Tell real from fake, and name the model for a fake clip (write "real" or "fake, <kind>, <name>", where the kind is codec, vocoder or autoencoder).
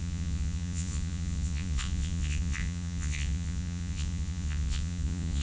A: fake, vocoder, Vocos